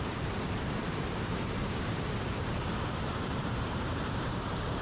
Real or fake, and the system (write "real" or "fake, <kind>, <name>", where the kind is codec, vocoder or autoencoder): fake, vocoder, BigVGAN v2